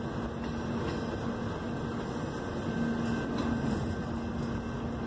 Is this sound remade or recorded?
recorded